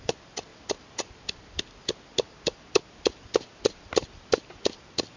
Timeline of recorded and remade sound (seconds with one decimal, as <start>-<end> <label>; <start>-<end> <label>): 0.0-5.2 recorded